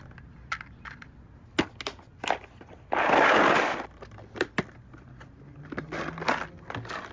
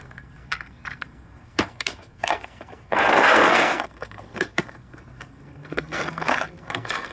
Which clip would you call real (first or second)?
first